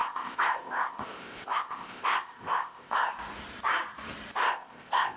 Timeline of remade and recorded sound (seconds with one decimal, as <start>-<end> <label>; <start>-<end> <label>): 0.0-3.1 remade; 3.1-4.4 recorded; 4.4-5.2 remade

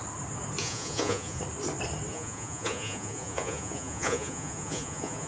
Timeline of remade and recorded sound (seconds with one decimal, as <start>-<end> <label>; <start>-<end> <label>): 0.0-0.6 recorded; 0.6-1.4 remade; 1.4-2.1 recorded; 2.1-5.3 remade

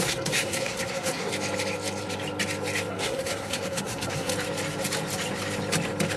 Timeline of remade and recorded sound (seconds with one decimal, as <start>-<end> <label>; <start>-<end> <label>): 0.0-1.3 remade; 1.3-2.9 recorded; 2.9-4.3 remade; 4.3-6.2 recorded

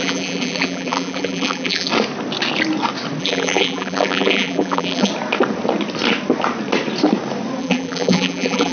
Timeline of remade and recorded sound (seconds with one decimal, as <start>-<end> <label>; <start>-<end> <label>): 0.0-1.9 remade; 1.9-3.2 recorded; 3.2-5.1 remade; 5.1-7.6 recorded; 7.6-8.7 remade

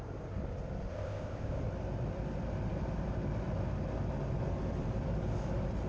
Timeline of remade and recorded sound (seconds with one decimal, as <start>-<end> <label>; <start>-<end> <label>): 0.0-0.9 recorded; 0.9-1.6 remade; 1.6-5.9 recorded

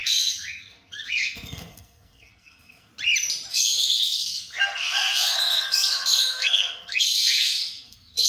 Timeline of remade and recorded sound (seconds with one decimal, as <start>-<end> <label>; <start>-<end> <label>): 0.0-2.9 remade; 2.9-3.5 recorded; 3.5-8.3 remade

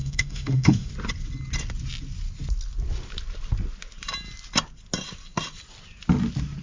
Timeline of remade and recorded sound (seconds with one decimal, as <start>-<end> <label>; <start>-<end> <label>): 0.0-0.9 remade; 0.9-6.6 recorded

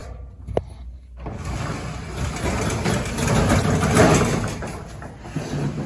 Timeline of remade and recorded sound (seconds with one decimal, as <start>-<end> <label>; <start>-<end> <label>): 0.0-5.9 recorded